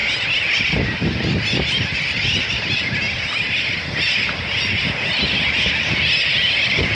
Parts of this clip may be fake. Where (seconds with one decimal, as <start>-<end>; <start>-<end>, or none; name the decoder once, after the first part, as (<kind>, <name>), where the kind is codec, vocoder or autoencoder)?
none